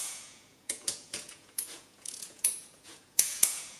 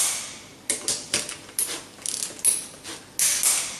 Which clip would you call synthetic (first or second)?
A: first